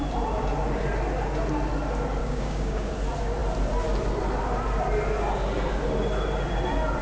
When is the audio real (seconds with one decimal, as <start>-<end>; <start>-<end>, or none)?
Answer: 0.0-2.2; 2.9-7.0